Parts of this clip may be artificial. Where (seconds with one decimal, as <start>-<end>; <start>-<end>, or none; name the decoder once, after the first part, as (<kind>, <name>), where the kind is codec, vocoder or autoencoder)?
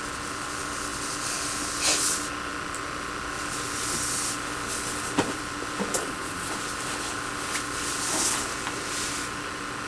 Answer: 6.0-6.5 (vocoder, Vocos)